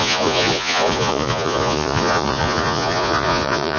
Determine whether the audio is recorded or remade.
remade